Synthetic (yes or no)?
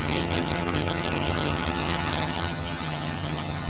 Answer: yes